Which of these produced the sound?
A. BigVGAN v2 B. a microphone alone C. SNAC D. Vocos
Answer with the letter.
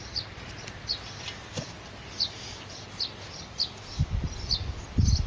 B